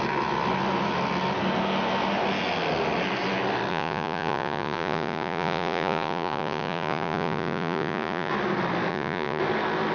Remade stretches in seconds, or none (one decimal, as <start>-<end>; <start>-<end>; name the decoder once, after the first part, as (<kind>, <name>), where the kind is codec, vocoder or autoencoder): 3.7-8.3 (vocoder, Vocos); 8.9-9.4